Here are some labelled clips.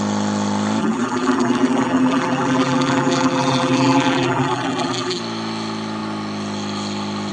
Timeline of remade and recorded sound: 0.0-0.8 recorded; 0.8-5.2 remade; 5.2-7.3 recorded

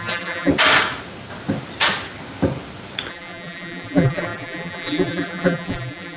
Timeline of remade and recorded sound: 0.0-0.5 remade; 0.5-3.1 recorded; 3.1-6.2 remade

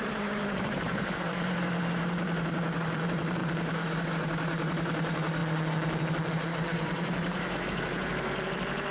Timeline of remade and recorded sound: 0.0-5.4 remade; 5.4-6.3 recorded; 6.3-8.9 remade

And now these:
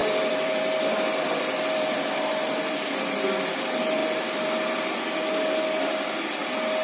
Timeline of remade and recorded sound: 0.0-2.2 remade; 2.2-4.0 recorded; 4.0-4.9 remade; 4.9-6.8 recorded

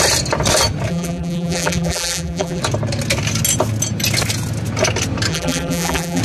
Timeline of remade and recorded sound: 0.0-0.9 recorded; 0.9-2.6 remade; 2.6-5.3 recorded; 5.3-6.2 remade